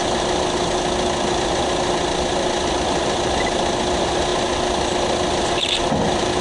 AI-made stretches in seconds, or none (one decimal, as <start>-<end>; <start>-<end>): none